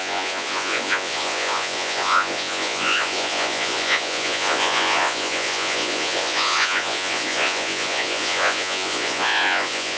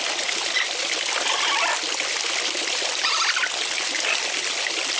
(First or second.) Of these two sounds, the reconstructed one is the first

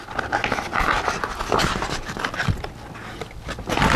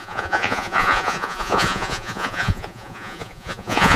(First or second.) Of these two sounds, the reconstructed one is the second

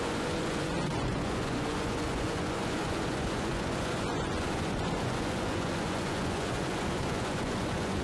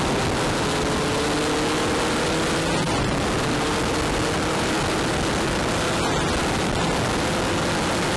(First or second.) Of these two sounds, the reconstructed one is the first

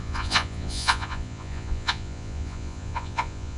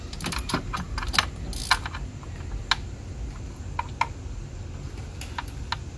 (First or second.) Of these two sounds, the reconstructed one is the first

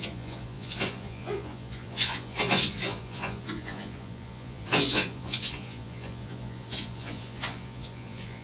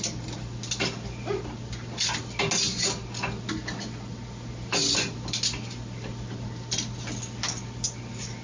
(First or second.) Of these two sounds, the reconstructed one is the first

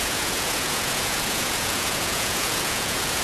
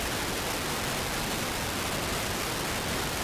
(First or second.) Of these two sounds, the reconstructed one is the first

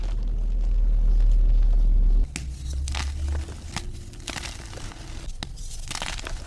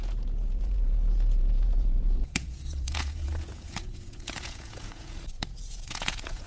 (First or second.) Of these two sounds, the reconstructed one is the second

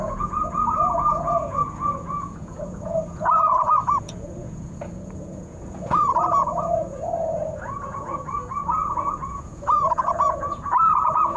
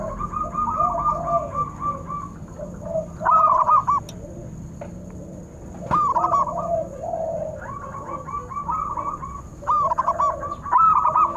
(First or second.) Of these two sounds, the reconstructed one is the first